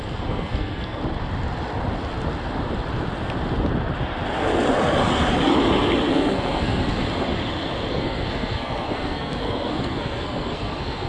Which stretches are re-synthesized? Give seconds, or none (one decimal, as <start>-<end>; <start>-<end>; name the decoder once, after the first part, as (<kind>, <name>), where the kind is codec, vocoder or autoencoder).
0.0-1.0 (codec, SNAC); 6.1-6.9; 7.9-11.1